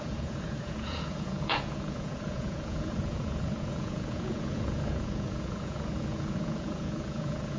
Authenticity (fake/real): fake